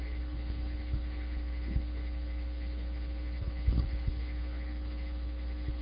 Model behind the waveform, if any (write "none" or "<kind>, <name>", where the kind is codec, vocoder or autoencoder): codec, HILCodec